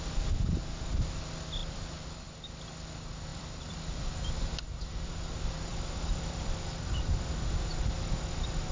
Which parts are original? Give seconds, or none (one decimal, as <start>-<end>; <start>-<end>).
0.0-1.6; 2.3-3.3; 4.1-5.7; 6.9-8.7